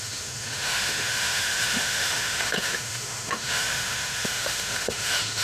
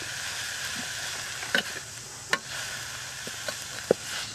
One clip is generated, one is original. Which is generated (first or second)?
first